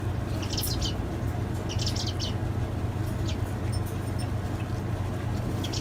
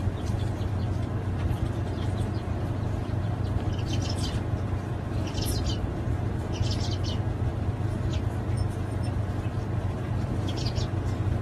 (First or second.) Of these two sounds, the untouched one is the first